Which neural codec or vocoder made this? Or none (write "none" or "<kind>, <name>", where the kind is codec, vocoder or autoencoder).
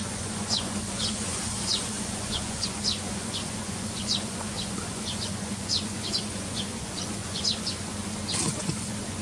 vocoder, Vocos